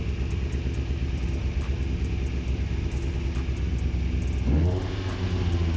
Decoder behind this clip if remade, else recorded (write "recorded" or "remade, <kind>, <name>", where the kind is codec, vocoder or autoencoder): recorded